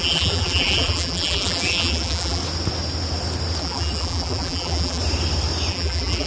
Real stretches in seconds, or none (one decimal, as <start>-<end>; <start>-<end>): 2.4-3.6; 5.0-5.7